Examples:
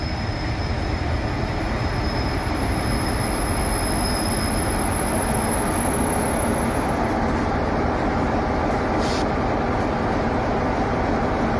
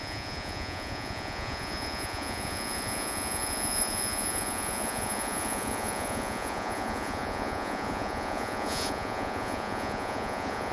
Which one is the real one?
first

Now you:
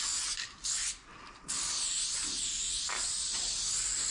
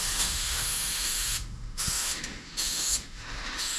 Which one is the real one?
first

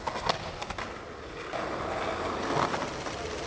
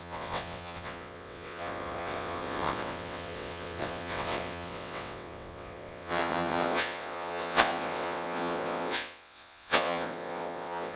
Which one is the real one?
first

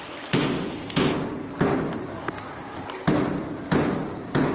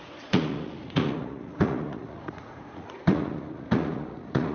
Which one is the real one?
first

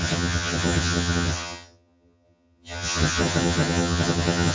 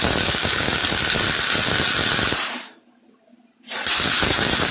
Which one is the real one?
second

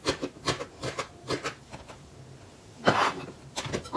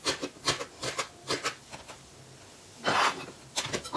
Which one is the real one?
second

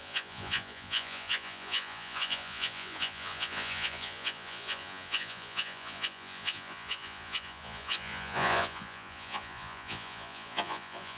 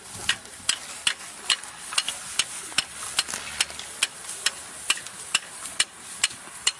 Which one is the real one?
second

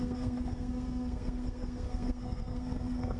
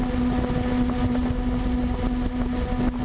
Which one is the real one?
second